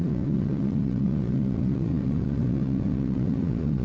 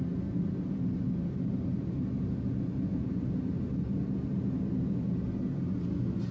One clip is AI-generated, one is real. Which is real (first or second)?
second